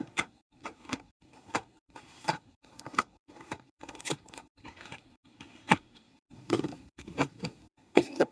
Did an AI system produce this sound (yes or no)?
yes